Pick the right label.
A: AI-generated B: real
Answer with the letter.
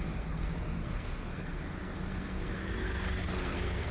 A